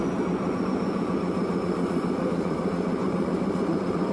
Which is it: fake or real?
fake